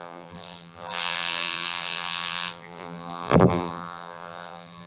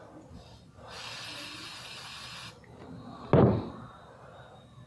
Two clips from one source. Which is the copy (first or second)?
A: first